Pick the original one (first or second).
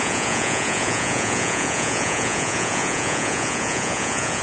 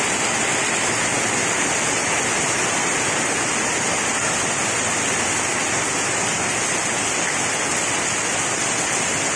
second